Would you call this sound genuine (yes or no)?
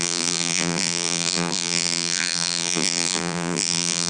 no